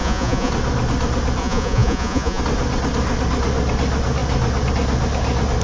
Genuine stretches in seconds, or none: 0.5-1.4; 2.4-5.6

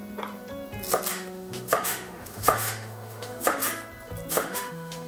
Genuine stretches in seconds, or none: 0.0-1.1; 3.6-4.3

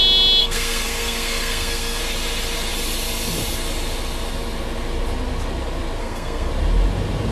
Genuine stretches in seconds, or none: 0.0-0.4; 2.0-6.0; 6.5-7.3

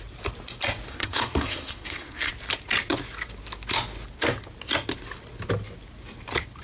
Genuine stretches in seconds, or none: 0.0-0.9; 2.3-6.6

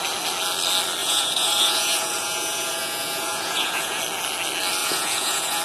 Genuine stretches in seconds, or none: 0.0-1.0; 4.0-4.8